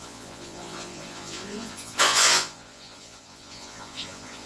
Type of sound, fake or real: fake